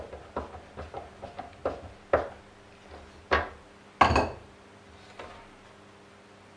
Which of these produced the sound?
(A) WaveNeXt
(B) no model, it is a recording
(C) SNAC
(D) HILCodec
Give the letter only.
B